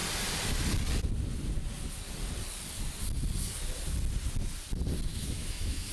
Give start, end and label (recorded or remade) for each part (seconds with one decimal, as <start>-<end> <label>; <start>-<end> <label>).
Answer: 0.0-5.1 recorded; 5.1-5.9 remade